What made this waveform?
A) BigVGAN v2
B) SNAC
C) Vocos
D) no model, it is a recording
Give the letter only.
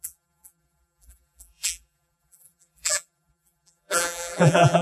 A